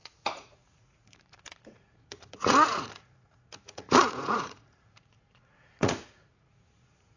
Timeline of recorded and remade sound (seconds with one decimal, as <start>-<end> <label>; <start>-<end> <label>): 0.0-7.2 remade